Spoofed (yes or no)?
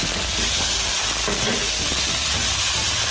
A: no